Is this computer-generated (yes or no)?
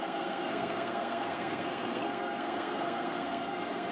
yes